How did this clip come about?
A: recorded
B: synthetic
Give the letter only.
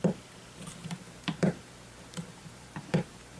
B